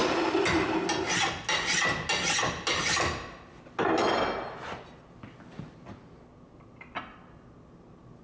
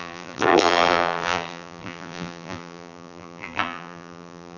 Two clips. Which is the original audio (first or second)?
first